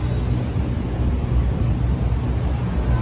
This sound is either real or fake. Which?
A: real